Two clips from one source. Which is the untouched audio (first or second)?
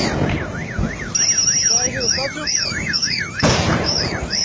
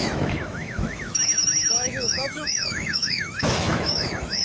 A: first